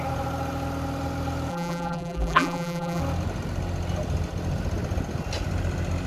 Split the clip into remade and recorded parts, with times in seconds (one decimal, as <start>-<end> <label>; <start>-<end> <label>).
0.0-1.5 recorded; 1.5-3.0 remade; 3.0-6.1 recorded